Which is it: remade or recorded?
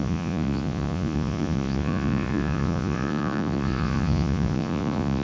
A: remade